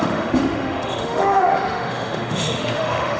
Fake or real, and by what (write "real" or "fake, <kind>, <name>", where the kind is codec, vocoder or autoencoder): fake, autoencoder, DAC-VAE